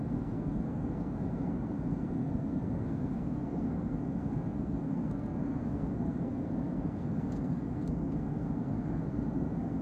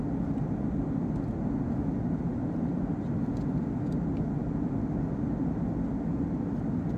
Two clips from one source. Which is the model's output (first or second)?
first